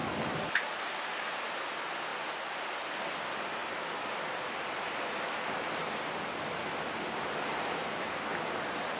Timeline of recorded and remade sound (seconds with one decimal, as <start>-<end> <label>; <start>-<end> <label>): 0.0-0.8 remade; 0.8-3.6 recorded; 3.6-7.3 remade; 7.3-9.0 recorded